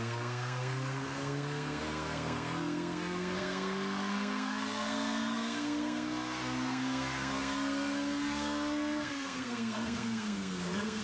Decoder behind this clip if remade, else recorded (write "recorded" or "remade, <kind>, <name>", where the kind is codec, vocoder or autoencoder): remade, codec, SNAC